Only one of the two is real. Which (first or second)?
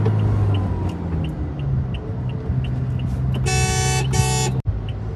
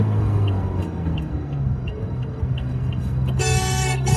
first